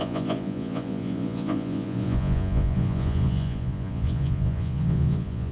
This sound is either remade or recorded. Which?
remade